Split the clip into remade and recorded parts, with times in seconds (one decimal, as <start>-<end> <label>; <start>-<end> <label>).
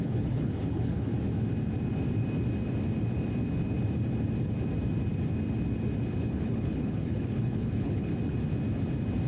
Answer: 0.0-1.1 remade; 1.1-6.2 recorded; 6.2-8.1 remade; 8.1-9.3 recorded